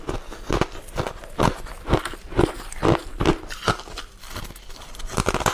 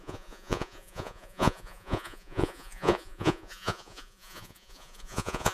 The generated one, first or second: second